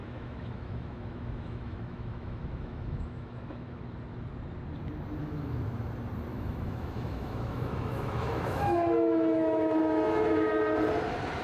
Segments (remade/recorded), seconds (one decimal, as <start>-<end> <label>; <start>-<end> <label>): 0.0-3.8 remade; 3.8-5.2 recorded; 5.2-5.8 remade; 5.8-6.3 recorded; 6.3-10.6 remade; 10.6-11.4 recorded